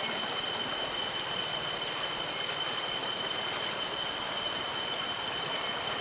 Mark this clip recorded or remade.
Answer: recorded